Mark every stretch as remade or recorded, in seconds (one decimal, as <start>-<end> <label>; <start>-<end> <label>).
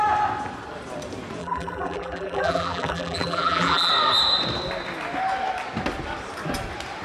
0.0-1.4 recorded; 1.4-3.9 remade; 3.9-7.0 recorded